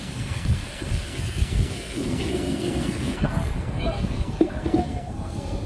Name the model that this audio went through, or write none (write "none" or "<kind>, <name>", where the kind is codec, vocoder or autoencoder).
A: codec, SNAC